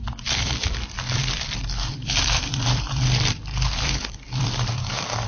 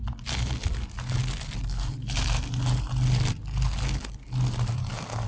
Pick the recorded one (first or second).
second